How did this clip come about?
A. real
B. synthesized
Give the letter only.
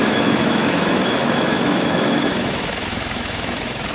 B